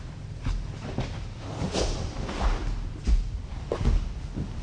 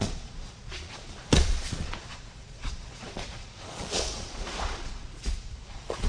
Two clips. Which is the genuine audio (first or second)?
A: first